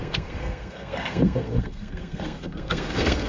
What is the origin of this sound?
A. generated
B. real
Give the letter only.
A